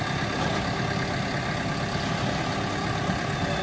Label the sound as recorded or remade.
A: recorded